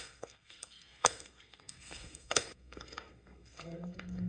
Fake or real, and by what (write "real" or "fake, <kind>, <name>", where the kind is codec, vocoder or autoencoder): fake, codec, SNAC